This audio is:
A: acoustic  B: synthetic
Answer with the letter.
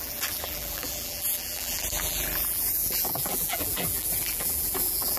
B